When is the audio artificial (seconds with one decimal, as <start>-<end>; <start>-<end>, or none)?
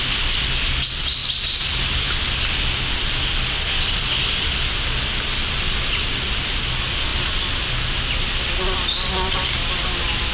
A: none